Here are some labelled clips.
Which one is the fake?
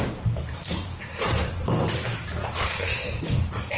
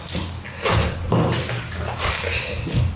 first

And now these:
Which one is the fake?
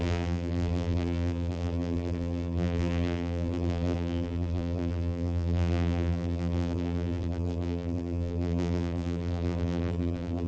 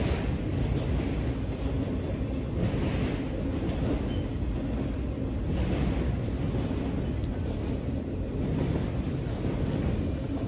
first